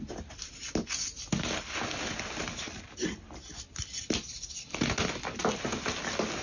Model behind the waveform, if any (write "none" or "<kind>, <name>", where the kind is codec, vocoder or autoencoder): none